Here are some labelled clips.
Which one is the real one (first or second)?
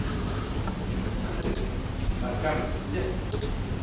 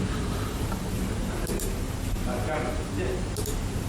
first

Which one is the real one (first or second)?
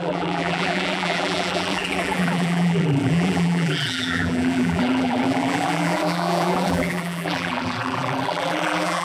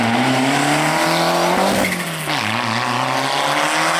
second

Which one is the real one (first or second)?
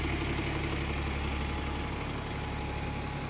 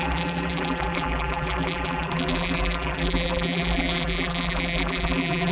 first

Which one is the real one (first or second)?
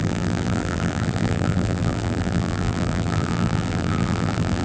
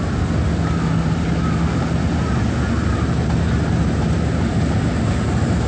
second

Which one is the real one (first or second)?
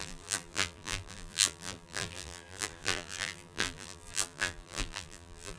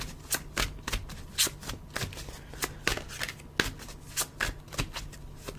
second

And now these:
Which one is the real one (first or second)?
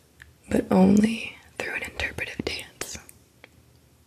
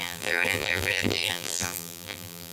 first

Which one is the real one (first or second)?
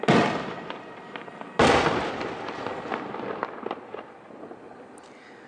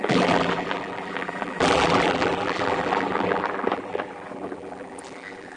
first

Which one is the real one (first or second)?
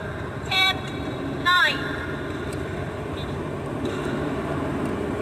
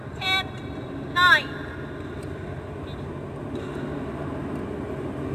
second